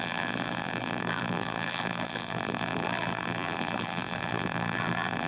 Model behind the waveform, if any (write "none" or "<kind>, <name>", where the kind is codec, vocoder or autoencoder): vocoder, BigVGAN v2